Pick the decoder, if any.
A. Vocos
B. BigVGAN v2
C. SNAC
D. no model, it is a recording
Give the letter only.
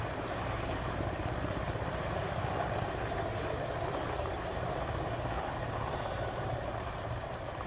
B